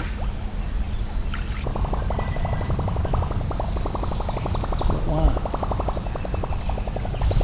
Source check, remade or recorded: recorded